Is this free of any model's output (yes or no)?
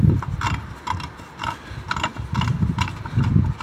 yes